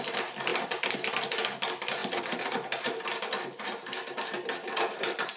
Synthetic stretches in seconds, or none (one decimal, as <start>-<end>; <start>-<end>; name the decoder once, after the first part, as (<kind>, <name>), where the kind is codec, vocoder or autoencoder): 2.0-5.4 (vocoder, BigVGAN v2)